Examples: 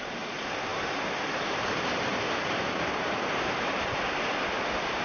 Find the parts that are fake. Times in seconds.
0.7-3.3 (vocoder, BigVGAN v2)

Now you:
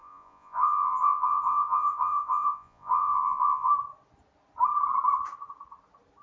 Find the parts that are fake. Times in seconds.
0.0-3.7 (vocoder, Vocos)

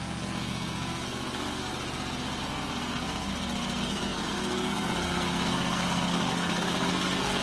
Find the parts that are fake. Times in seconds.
0.0-1.7 (codec, SNAC); 2.4-7.4

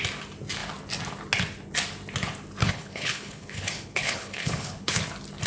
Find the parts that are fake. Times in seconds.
2.6-5.0 (codec, HILCodec)

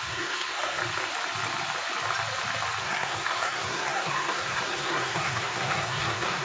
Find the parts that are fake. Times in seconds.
0.0-0.8 (codec, SNAC); 2.8-6.4